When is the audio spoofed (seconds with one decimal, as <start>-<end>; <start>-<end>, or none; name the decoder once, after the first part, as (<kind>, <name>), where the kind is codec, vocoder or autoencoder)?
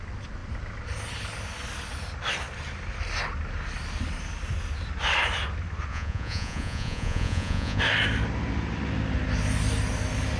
5.9-7.8 (vocoder, Vocos)